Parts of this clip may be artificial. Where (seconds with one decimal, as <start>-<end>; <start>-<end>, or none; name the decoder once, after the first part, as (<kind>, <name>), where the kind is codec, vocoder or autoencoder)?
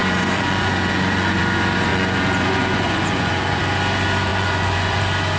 0.0-1.4 (vocoder, Vocos); 1.9-3.6; 4.3-5.0